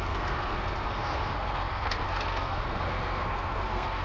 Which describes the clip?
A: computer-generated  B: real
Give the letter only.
A